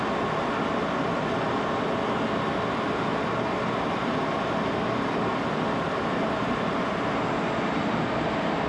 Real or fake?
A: real